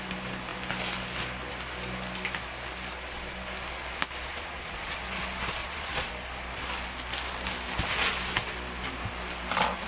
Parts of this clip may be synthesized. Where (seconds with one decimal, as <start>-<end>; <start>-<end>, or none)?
4.3-5.0; 5.6-6.1